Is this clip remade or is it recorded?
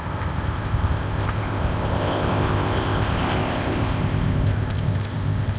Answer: remade